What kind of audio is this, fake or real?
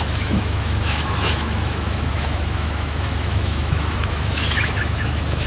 fake